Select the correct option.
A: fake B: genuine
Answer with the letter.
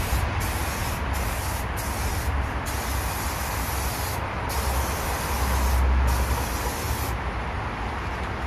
B